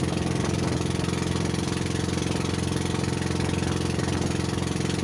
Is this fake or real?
real